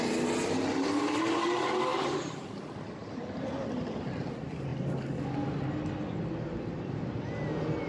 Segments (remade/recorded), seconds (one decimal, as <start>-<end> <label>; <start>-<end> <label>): 0.0-1.9 recorded; 1.9-2.6 remade; 2.6-3.0 recorded; 3.0-3.7 remade; 3.7-7.9 recorded